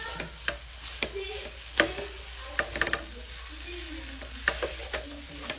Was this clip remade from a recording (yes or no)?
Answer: no